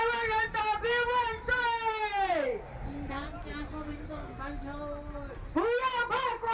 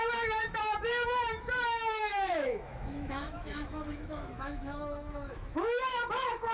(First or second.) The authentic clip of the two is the first